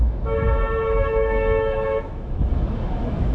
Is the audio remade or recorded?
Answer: remade